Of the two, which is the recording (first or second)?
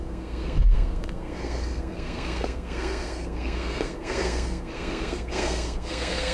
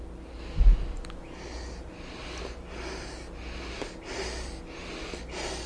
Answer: second